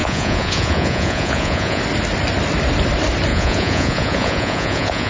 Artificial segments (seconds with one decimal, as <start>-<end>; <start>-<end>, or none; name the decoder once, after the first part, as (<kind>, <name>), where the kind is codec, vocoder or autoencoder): 0.0-1.8 (vocoder, Vocos); 3.3-5.1